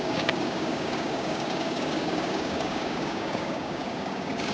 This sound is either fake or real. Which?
fake